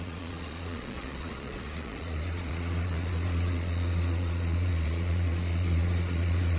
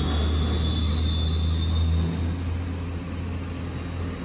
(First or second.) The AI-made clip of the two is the first